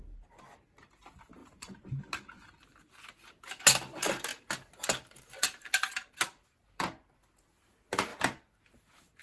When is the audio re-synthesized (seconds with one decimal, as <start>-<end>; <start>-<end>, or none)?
1.4-2.0